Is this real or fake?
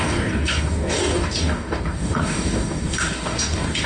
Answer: fake